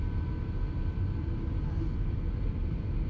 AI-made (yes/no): no